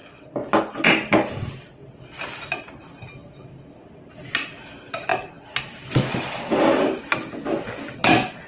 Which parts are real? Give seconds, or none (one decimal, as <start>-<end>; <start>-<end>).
0.0-8.5